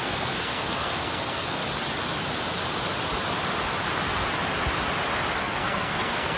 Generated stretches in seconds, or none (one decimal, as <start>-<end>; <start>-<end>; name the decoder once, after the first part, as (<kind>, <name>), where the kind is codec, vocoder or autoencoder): 0.0-1.6 (codec, SNAC); 5.4-6.4